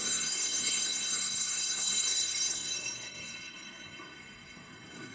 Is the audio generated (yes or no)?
yes